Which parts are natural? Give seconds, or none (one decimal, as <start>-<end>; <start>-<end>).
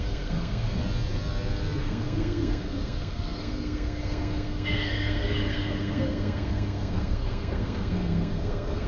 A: 0.8-1.8